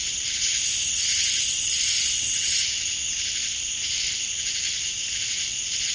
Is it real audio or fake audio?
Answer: real